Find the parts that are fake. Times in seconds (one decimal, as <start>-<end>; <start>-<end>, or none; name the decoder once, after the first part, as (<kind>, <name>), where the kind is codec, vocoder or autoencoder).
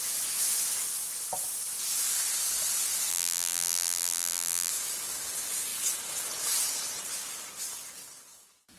3.1-4.7 (vocoder, BigVGAN v2)